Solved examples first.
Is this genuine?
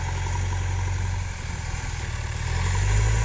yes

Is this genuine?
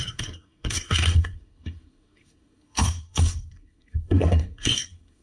no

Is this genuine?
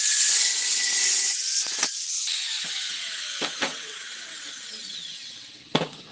no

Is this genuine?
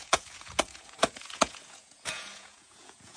no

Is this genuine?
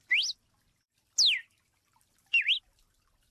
yes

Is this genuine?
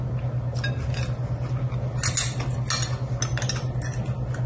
yes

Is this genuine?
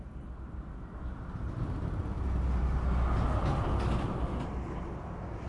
yes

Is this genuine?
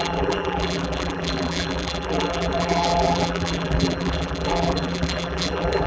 no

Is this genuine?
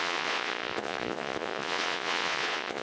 no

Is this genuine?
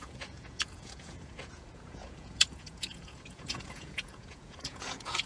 no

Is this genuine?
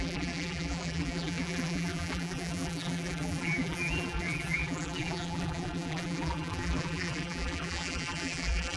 no